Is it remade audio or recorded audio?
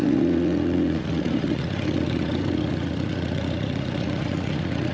remade